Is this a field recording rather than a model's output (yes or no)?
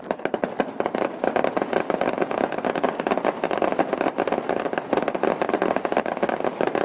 yes